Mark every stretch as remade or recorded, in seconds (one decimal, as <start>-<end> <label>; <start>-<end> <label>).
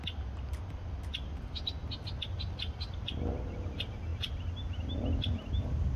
0.0-6.0 recorded